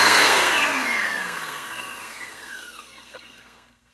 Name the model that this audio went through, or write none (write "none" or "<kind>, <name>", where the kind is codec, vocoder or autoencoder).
codec, SNAC